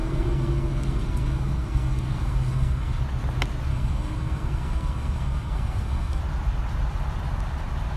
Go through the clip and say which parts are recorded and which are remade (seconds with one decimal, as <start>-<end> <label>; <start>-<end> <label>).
0.0-3.0 remade; 3.0-3.7 recorded; 3.7-6.2 remade; 6.2-8.0 recorded